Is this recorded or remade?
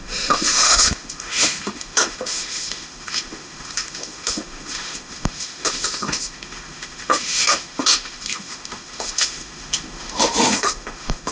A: remade